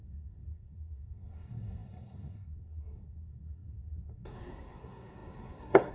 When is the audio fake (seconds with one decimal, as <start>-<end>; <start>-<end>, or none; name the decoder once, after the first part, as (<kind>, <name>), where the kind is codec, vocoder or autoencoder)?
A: 0.0-5.9 (codec, SNAC)